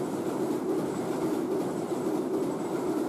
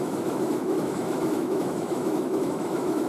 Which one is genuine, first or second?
first